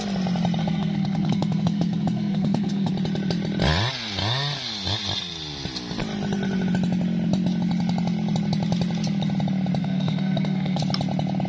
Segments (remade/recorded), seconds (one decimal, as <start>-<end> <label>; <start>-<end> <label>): 0.0-0.6 recorded; 0.6-2.9 remade; 2.9-9.8 recorded; 9.8-10.8 remade; 10.8-11.5 recorded